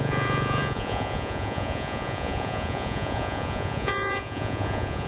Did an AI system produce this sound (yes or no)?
yes